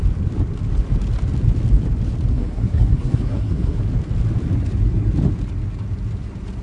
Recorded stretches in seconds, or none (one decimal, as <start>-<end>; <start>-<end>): 0.0-2.3; 3.8-6.6